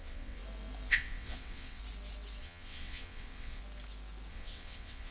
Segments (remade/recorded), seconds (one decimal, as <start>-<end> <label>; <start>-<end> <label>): 0.0-0.4 remade; 0.4-0.9 recorded; 0.9-1.8 remade; 1.8-2.4 recorded; 2.4-3.6 remade; 3.6-4.3 recorded; 4.3-5.1 remade